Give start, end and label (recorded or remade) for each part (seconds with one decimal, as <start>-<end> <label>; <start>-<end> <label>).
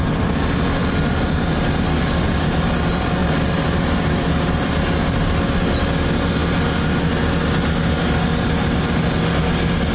0.0-3.2 recorded; 3.2-5.2 remade; 5.2-9.9 recorded